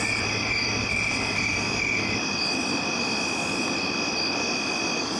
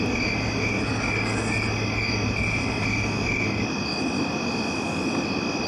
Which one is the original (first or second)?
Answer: second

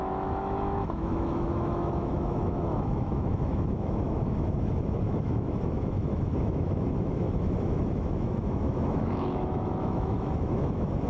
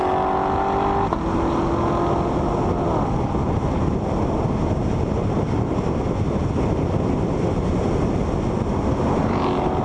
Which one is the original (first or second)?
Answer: second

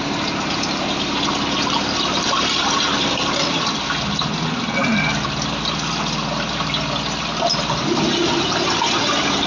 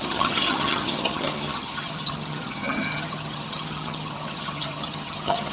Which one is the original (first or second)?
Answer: first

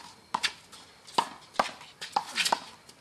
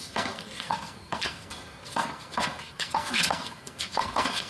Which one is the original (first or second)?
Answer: first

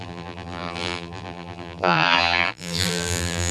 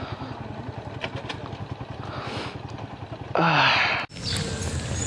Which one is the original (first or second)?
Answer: second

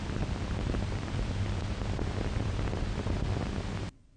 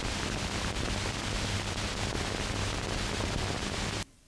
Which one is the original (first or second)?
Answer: second